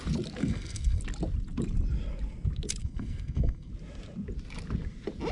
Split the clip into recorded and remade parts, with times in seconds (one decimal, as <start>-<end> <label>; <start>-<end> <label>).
0.0-0.4 recorded; 0.4-1.0 remade; 1.0-2.8 recorded; 2.8-3.7 remade; 3.7-5.3 recorded